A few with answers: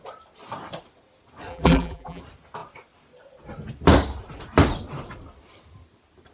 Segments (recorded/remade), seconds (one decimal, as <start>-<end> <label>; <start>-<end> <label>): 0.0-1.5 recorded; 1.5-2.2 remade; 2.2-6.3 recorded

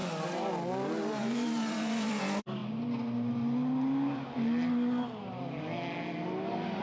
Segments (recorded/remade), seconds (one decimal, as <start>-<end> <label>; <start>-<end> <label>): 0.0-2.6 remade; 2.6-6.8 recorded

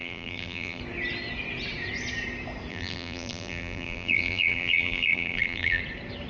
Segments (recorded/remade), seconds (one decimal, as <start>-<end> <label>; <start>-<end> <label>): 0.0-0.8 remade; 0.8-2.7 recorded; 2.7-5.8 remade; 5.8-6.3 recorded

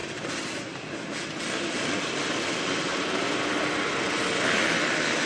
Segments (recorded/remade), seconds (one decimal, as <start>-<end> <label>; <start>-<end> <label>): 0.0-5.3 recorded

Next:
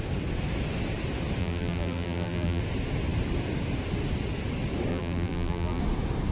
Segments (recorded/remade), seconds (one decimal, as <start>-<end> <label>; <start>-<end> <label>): 0.0-1.4 recorded; 1.4-2.6 remade; 2.6-4.9 recorded; 4.9-5.8 remade; 5.8-6.3 recorded

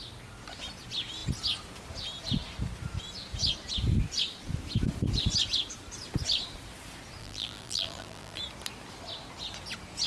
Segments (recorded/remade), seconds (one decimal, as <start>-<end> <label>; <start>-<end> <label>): 0.0-7.2 recorded; 7.2-8.4 remade; 8.4-10.1 recorded

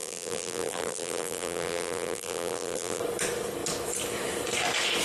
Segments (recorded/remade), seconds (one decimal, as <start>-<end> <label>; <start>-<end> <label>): 0.0-3.0 remade; 3.0-5.0 recorded